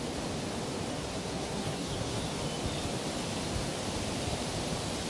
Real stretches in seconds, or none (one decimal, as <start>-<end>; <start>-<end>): 0.0-0.9; 2.2-5.1

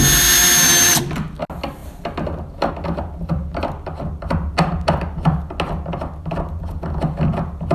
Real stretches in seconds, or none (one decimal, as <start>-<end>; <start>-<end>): 0.0-7.7

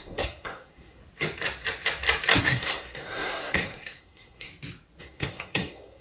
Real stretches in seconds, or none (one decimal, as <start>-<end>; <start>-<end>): 1.0-2.4; 4.5-5.0

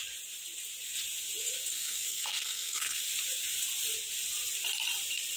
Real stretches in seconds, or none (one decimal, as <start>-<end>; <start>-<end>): 0.0-1.7; 3.0-5.4

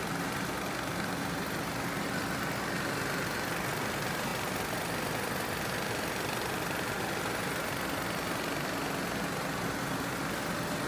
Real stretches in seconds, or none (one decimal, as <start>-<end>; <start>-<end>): 0.0-10.9

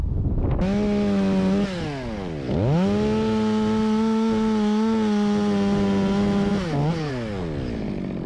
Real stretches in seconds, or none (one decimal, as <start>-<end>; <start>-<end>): 0.0-8.3